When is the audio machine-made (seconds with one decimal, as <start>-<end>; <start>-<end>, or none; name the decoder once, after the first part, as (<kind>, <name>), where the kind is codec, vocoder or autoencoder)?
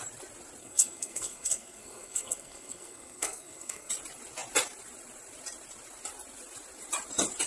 0.6-3.9 (codec, SNAC)